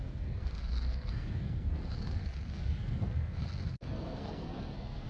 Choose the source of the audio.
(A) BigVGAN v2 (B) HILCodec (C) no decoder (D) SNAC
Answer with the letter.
D